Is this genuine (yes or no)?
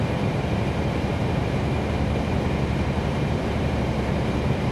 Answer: no